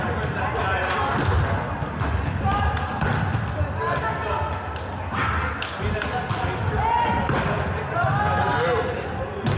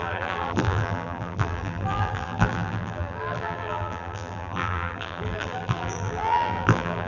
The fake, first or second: second